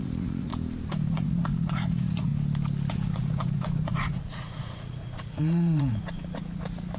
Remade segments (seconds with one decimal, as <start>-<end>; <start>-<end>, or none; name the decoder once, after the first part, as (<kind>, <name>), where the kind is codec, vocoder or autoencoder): 0.0-0.5 (vocoder, Vocos); 1.1-2.3; 2.9-7.0